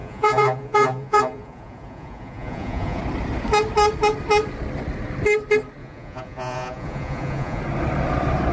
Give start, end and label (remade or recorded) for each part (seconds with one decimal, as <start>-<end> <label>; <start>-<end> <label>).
0.0-3.0 remade; 3.0-5.8 recorded; 5.8-7.6 remade; 7.6-8.5 recorded